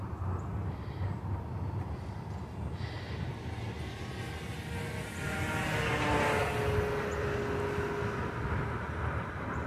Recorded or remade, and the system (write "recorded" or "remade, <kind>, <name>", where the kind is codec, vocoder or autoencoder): recorded